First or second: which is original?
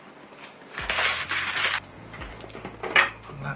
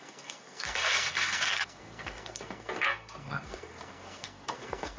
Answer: first